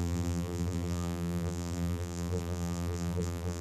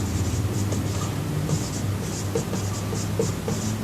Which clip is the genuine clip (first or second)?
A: second